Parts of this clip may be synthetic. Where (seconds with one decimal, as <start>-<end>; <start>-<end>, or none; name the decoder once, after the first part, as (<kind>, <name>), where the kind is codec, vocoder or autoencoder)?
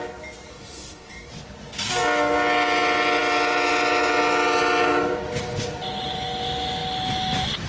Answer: 0.5-1.3 (codec, DAC)